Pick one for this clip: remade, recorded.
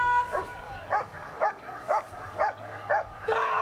remade